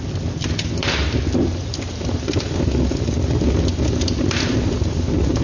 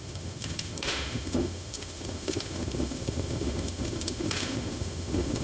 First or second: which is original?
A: first